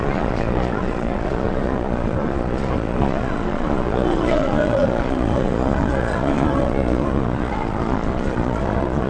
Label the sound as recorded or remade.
remade